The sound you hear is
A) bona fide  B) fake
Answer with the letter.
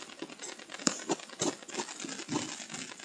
A